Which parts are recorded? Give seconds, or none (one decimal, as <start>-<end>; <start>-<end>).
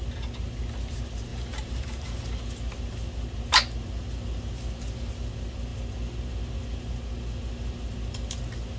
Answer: 0.0-1.3; 2.4-8.8